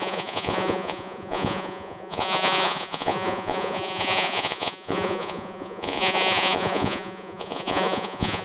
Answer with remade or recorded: remade